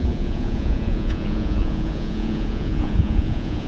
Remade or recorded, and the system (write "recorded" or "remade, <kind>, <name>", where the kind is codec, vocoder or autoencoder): remade, vocoder, Vocos